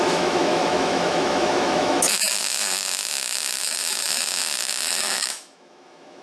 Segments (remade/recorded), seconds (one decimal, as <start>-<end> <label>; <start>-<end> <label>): 0.0-6.2 remade